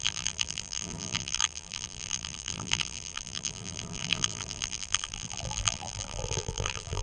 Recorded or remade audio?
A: remade